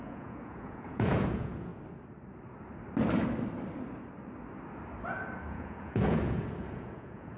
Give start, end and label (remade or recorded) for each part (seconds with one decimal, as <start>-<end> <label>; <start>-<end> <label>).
0.0-1.7 remade; 1.7-5.5 recorded; 5.5-7.4 remade